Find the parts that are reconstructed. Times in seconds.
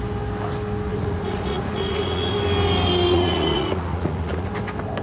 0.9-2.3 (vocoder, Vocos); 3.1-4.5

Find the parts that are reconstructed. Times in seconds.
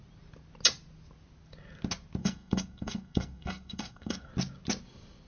2.2-4.3 (codec, SNAC)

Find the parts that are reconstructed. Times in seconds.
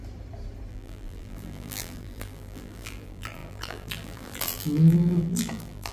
0.7-5.9 (vocoder, BigVGAN v2)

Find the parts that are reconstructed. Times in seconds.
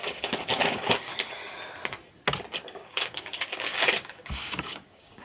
0.0-1.1 (codec, DAC); 2.5-5.2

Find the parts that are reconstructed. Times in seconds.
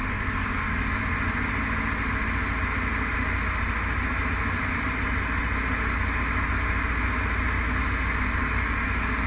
0.0-1.0 (codec, DAC); 8.4-9.3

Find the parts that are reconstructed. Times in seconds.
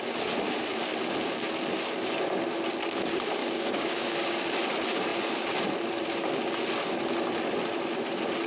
3.4-4.4 (codec, DAC)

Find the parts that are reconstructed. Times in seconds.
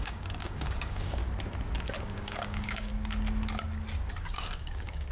0.0-1.2 (codec, DAC); 2.0-2.9; 4.2-5.1